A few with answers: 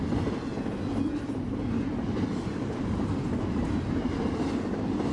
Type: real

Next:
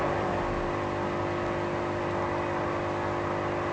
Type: real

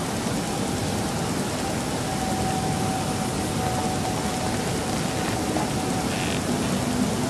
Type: real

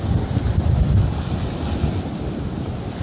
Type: real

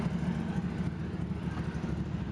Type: real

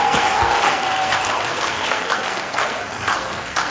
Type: fake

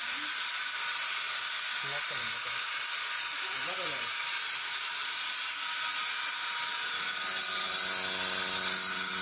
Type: real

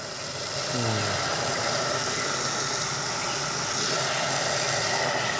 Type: real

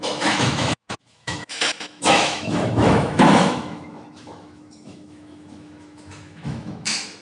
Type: fake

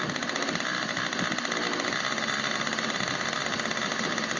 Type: real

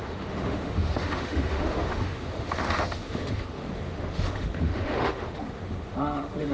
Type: fake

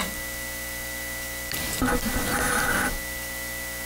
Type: real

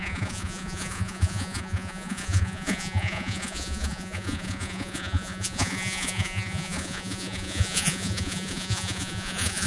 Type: fake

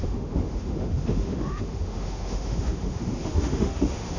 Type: fake